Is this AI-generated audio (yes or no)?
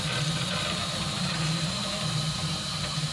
yes